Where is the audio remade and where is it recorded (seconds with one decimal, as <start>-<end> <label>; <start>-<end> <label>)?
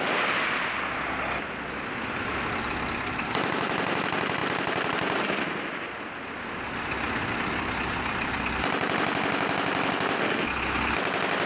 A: 0.0-11.5 recorded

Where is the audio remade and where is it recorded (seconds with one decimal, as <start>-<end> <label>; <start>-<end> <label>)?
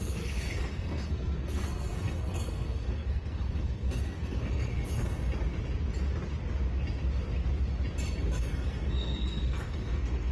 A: 0.0-5.3 remade; 5.3-8.4 recorded; 8.4-10.3 remade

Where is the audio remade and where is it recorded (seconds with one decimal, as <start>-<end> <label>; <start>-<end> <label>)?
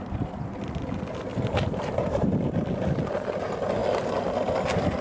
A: 0.0-1.3 recorded; 1.3-2.3 remade; 2.3-5.0 recorded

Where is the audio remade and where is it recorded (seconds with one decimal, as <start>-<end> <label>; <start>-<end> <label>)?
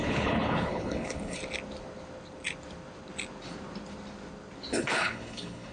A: 0.0-1.4 remade; 1.4-4.8 recorded; 4.8-5.7 remade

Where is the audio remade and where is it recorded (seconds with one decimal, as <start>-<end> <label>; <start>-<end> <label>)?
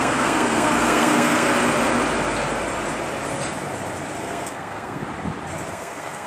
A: 0.0-1.5 remade; 1.5-4.2 recorded; 4.2-5.0 remade; 5.0-5.7 recorded; 5.7-6.3 remade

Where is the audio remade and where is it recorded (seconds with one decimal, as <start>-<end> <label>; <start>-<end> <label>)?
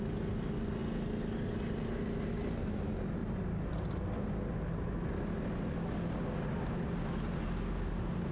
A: 0.0-8.3 recorded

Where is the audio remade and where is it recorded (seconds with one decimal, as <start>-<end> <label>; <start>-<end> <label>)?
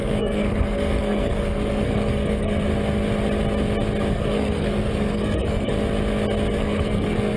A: 0.0-2.7 remade; 2.7-4.1 recorded; 4.1-5.7 remade; 5.7-6.5 recorded; 6.5-7.4 remade